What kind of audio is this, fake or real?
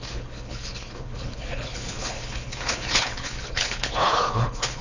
fake